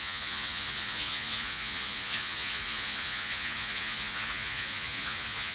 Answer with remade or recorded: remade